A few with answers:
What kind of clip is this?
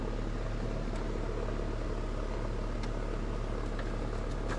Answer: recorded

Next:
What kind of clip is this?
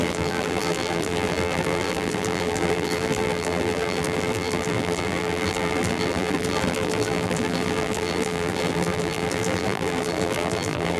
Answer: remade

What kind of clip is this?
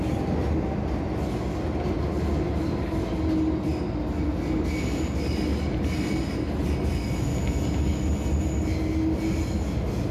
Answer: recorded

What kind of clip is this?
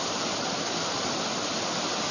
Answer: recorded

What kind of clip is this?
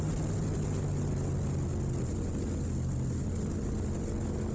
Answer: recorded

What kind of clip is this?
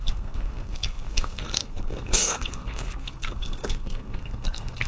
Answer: remade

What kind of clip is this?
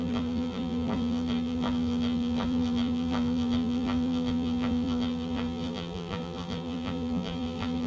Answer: remade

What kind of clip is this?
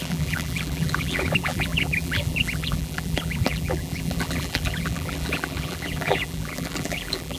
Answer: remade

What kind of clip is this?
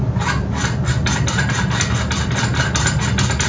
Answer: recorded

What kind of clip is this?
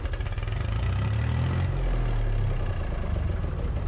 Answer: recorded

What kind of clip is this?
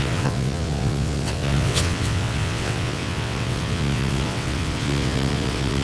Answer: remade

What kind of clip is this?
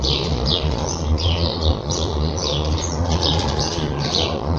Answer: remade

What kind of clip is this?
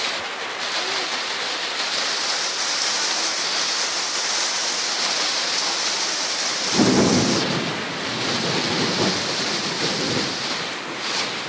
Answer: recorded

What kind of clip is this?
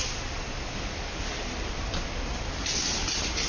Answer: recorded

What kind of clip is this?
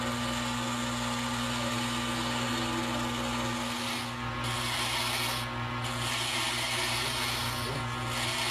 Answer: recorded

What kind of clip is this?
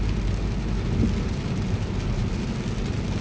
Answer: recorded